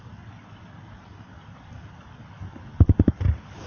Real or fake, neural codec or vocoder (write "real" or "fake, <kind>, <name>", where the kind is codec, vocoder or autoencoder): real